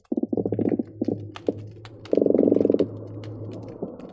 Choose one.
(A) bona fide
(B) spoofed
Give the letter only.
A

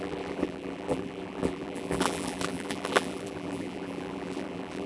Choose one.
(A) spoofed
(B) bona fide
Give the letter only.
A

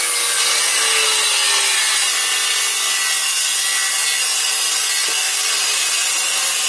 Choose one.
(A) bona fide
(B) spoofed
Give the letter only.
A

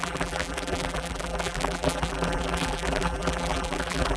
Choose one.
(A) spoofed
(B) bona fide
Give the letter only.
A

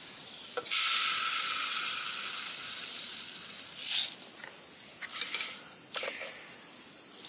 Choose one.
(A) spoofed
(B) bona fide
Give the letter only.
B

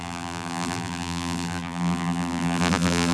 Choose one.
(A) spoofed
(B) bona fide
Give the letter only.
A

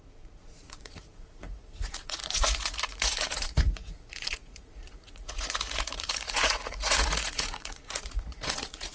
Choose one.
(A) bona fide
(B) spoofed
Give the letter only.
B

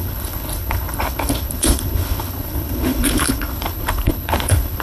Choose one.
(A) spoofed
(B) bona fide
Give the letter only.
A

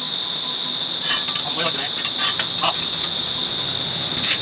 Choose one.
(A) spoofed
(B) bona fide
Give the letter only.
B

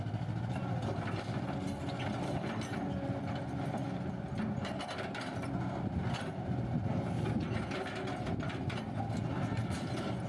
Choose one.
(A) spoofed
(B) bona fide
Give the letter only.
B